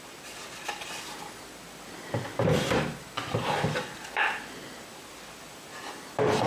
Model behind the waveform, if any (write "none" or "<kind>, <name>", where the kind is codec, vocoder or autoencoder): none